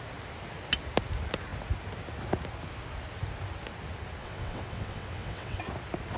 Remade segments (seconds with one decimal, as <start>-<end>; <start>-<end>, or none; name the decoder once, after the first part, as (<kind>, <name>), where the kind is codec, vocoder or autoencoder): 4.2-5.6 (vocoder, WaveNeXt)